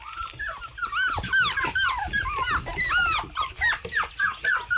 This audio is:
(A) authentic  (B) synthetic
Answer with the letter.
A